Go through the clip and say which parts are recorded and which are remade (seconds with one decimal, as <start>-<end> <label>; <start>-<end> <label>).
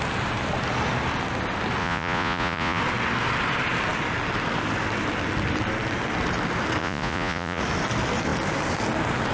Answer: 0.0-1.8 recorded; 1.8-2.8 remade; 2.8-6.8 recorded; 6.8-7.6 remade; 7.6-9.3 recorded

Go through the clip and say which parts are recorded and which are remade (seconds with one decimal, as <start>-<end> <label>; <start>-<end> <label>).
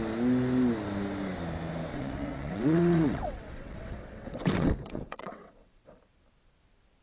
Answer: 0.0-1.9 recorded; 1.9-5.9 remade; 5.9-7.0 recorded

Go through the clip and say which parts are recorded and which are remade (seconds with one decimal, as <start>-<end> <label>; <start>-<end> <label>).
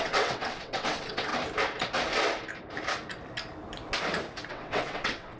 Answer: 0.0-1.3 remade; 1.3-4.5 recorded; 4.5-5.4 remade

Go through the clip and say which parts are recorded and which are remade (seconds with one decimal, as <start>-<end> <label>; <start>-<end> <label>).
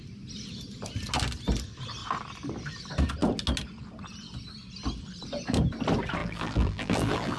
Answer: 0.0-6.2 recorded; 6.2-7.4 remade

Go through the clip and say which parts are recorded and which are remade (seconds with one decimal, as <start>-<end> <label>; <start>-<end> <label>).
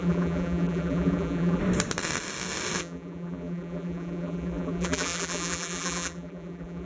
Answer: 0.0-1.6 remade; 1.6-2.8 recorded; 2.8-6.9 remade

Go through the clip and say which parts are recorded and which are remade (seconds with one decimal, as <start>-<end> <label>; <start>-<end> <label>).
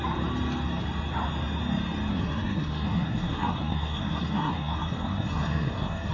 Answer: 0.0-2.1 recorded; 2.1-6.1 remade